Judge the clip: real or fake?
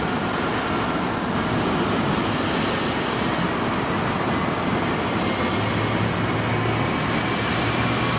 real